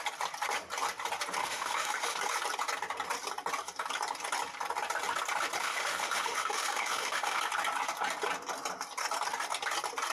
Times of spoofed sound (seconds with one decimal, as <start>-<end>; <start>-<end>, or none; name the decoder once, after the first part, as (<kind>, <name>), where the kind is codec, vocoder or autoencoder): 1.4-2.2 (autoencoder, DAC-VAE); 5.6-7.4